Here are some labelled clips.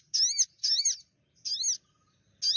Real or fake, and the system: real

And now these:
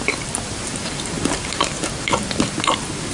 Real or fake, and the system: fake, vocoder, BigVGAN v2